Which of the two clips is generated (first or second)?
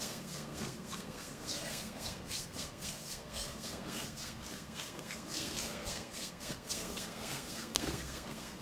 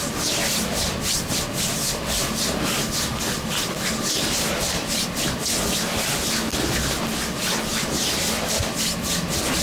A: first